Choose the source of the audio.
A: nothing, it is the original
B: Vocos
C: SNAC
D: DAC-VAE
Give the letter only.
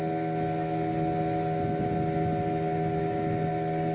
A